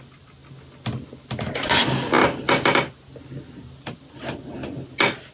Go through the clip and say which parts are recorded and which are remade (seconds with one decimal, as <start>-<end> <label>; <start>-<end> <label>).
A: 0.0-5.3 recorded